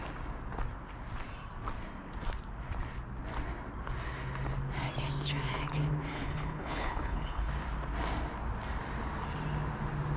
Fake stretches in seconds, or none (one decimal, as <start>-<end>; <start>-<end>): 6.1-7.5